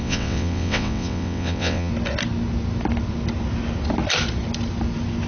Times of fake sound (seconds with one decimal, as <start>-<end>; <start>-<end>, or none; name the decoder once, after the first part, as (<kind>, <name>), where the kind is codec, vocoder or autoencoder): 0.0-1.9 (vocoder, WaveNeXt)

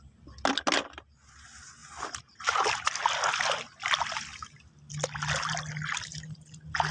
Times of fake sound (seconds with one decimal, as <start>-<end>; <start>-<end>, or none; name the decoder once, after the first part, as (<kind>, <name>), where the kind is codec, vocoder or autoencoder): 1.8-2.9 (vocoder, BigVGAN v2)

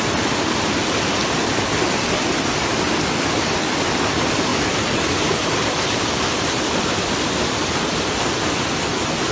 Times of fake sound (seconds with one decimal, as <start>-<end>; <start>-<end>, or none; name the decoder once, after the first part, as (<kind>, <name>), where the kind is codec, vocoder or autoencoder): none

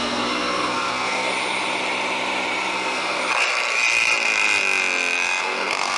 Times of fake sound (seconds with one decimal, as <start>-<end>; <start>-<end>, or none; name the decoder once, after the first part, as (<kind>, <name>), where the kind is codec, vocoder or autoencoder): 0.0-1.3 (codec, SNAC); 2.7-3.2; 5.4-6.0